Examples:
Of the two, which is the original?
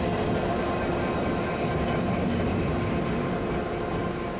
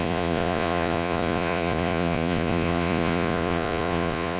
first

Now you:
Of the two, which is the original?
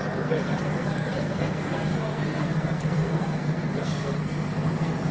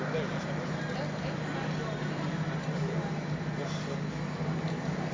second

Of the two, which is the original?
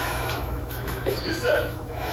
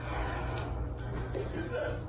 second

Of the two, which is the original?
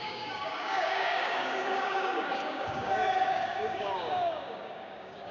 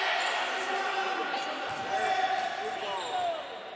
second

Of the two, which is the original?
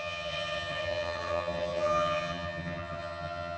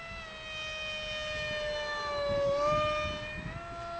second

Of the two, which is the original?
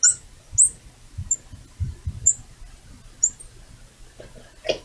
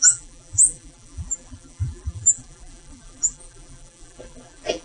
first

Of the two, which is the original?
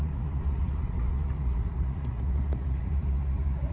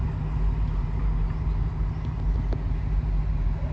second